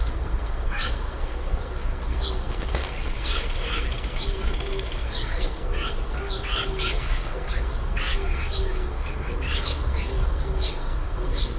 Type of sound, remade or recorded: remade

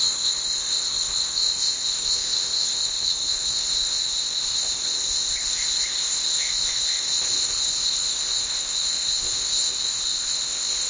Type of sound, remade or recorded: remade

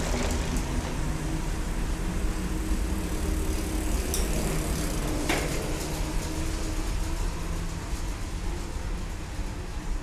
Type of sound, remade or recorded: recorded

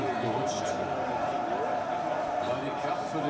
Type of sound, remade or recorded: recorded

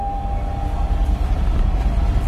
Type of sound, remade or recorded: recorded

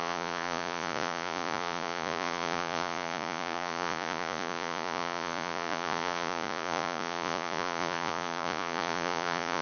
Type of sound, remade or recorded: remade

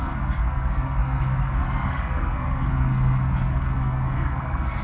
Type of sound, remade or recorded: remade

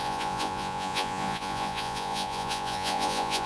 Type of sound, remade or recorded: remade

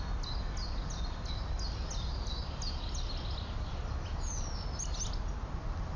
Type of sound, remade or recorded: recorded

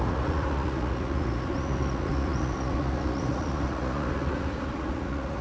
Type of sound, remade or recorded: remade